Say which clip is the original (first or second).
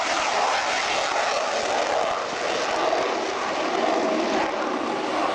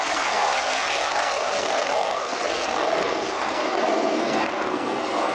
first